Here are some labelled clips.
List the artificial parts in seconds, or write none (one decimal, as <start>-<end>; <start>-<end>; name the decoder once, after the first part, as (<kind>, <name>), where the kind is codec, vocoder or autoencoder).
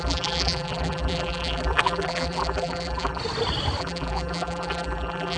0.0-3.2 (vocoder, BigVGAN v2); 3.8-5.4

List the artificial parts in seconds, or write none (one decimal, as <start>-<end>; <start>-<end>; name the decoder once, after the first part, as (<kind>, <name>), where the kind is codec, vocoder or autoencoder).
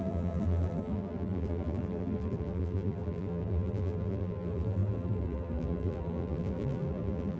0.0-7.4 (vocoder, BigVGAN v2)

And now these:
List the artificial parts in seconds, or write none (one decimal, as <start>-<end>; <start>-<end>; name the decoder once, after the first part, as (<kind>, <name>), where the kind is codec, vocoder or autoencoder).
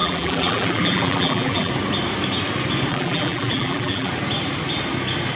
0.0-1.7 (vocoder, BigVGAN v2); 2.9-4.1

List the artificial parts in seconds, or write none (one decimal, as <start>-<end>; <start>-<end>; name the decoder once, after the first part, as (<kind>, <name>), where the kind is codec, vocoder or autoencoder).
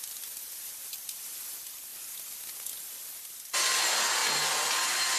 none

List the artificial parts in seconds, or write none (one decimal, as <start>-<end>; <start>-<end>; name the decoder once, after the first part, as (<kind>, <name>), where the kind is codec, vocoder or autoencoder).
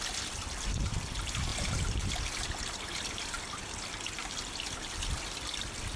1.5-4.9 (vocoder, BigVGAN v2)